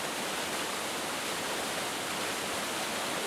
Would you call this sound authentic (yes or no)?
yes